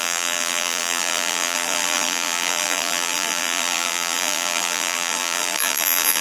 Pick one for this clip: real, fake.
fake